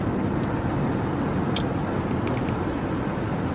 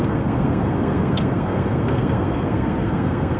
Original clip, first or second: first